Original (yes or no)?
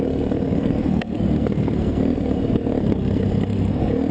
no